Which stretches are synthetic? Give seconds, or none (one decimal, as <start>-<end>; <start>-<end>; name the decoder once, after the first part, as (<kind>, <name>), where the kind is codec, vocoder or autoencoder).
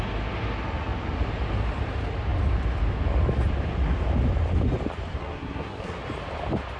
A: 5.1-6.0 (codec, SNAC)